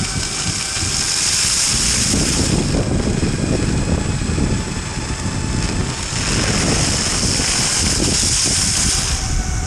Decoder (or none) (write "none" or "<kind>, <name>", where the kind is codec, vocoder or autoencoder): none